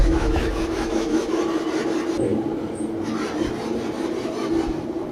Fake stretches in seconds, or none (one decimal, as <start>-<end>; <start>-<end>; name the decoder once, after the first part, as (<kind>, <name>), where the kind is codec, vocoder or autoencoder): 0.0-1.3 (autoencoder, DAC-VAE)

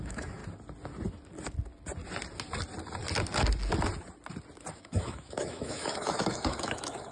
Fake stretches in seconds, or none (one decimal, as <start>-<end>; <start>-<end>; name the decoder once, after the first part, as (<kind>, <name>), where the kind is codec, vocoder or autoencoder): 0.0-0.4 (autoencoder, DAC-VAE); 4.7-7.1

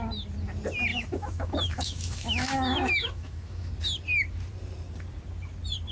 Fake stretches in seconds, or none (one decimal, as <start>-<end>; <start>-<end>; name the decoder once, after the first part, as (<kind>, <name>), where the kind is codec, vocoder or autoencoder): 0.9-3.7 (autoencoder, DAC-VAE)

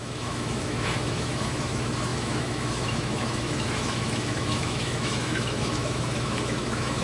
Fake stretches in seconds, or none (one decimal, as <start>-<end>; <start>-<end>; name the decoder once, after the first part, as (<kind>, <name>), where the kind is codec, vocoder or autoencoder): 0.0-7.0 (autoencoder, DAC-VAE)

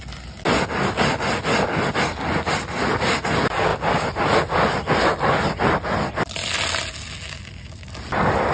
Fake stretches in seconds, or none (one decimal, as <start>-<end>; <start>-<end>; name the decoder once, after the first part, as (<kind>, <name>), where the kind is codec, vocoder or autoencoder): none

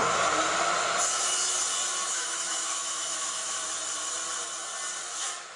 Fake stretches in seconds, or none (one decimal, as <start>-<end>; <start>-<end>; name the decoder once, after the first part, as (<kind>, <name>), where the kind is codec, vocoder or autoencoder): 2.1-3.6 (autoencoder, DAC-VAE); 5.0-5.6

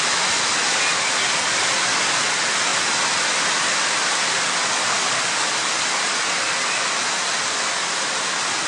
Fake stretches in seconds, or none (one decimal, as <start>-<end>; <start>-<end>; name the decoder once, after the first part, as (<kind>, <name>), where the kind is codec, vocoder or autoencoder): none